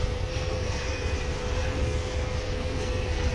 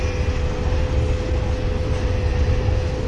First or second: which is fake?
first